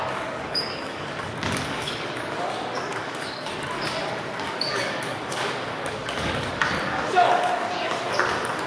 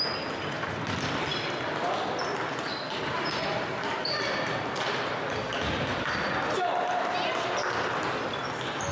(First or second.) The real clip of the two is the second